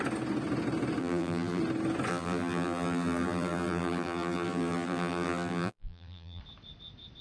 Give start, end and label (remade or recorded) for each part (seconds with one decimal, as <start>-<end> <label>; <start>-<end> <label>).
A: 0.0-1.0 recorded; 1.0-1.6 remade; 1.6-2.1 recorded; 2.1-6.4 remade; 6.4-7.2 recorded

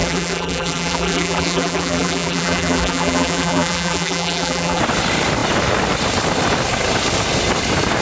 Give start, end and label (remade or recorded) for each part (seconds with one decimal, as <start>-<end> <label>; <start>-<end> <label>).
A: 0.0-4.8 remade; 4.8-8.0 recorded

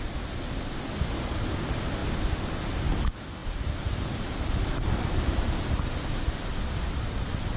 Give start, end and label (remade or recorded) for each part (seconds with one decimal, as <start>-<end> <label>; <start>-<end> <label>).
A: 0.0-2.0 recorded; 2.0-2.5 remade; 2.5-3.4 recorded; 3.4-6.4 remade; 6.4-7.6 recorded